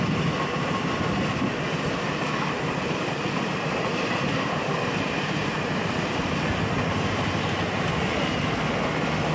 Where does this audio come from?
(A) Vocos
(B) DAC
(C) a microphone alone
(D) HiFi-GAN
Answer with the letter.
C